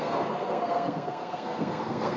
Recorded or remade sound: remade